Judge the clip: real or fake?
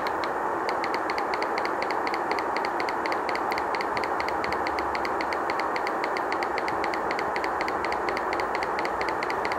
real